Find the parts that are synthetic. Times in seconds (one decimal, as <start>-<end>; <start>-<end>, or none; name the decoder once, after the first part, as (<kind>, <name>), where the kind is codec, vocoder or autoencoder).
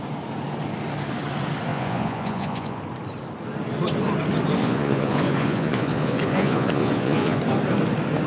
1.7-2.8 (vocoder, Vocos); 4.6-7.4